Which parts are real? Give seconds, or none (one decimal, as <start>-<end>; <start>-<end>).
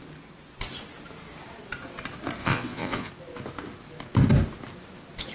0.0-2.4; 3.1-5.3